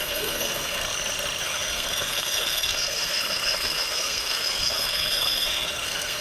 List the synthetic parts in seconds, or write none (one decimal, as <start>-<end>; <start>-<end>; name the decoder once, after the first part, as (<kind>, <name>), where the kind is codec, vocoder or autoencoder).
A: 0.0-0.9 (codec, SNAC); 1.4-6.2